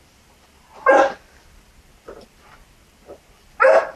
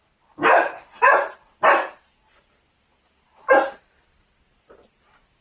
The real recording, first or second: second